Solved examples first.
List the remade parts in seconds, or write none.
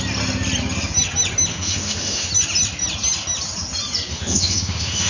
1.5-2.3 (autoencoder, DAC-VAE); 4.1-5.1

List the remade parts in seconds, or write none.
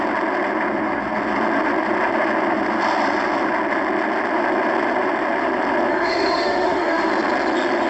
5.9-7.1 (autoencoder, DAC-VAE)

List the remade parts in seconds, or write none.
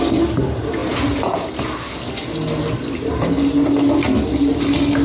none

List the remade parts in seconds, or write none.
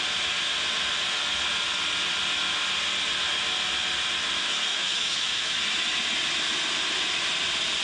4.7-5.6 (autoencoder, DAC-VAE)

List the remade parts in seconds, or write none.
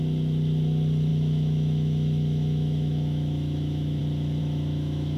1.1-4.0 (autoencoder, DAC-VAE); 4.4-5.2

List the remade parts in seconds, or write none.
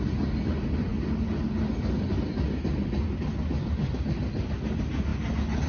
none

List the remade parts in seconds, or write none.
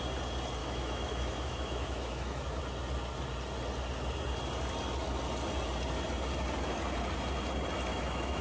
0.6-2.6 (autoencoder, DAC-VAE); 7.9-8.4